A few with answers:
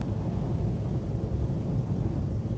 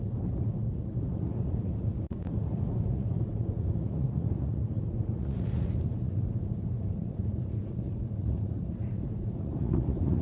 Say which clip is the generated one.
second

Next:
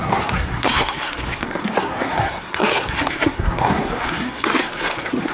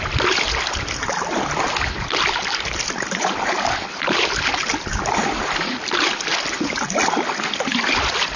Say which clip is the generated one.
first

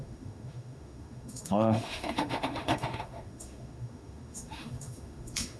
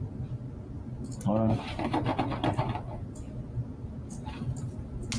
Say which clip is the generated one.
first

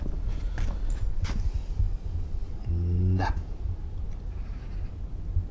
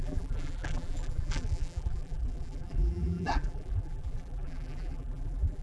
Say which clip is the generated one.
second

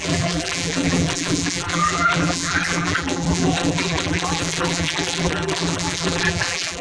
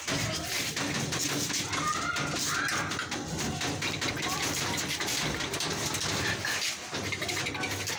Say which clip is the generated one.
first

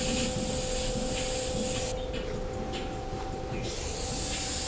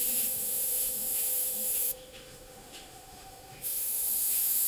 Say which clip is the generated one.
second